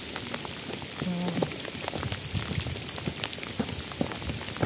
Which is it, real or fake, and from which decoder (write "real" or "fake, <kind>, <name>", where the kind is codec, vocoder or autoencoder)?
real